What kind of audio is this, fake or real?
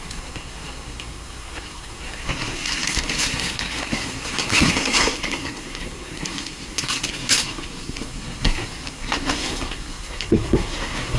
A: fake